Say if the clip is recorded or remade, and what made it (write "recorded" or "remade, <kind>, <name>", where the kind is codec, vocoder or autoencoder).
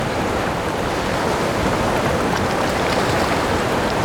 remade, vocoder, BigVGAN v2